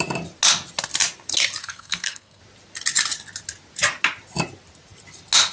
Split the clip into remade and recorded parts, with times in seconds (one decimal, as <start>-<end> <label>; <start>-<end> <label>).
0.0-1.6 recorded; 1.6-2.4 remade; 2.4-5.5 recorded